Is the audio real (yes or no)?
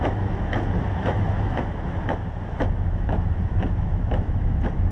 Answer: no